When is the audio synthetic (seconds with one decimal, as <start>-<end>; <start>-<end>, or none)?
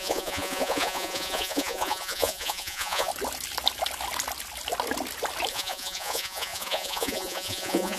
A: 0.0-3.1; 5.5-8.0